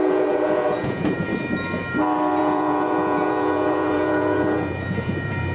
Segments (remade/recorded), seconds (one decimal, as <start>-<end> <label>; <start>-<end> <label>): 0.0-1.3 remade; 1.3-2.4 recorded; 2.4-5.5 remade